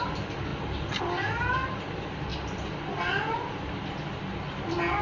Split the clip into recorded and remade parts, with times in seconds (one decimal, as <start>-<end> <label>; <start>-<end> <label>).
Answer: 0.0-5.0 recorded